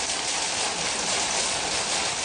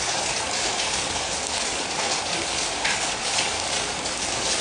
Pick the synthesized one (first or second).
second